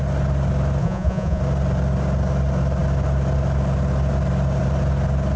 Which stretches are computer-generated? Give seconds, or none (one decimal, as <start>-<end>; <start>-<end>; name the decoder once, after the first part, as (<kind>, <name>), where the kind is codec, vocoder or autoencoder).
0.8-1.4 (vocoder, Vocos)